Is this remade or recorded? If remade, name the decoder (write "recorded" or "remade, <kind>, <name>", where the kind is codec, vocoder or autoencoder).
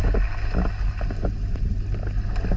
recorded